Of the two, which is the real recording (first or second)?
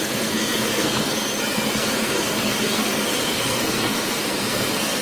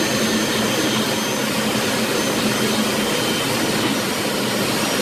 second